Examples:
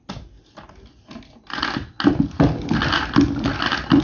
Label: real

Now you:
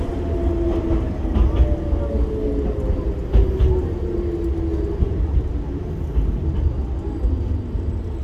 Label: real